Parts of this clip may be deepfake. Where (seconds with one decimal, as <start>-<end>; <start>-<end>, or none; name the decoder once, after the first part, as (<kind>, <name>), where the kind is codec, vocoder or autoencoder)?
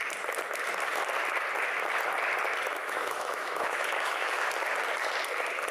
2.8-4.4 (autoencoder, DAC-VAE)